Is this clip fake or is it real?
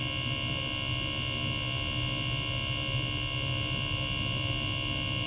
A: real